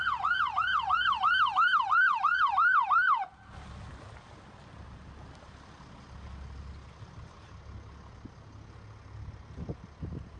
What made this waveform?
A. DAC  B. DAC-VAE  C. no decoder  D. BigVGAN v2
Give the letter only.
C